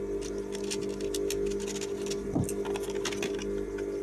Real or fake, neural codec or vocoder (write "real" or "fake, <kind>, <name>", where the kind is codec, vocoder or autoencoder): real